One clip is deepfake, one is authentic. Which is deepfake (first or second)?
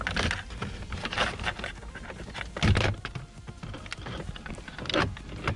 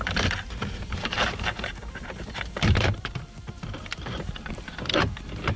second